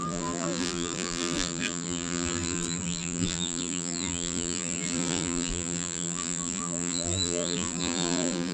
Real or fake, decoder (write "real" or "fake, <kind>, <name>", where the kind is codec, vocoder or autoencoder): fake, vocoder, BigVGAN v2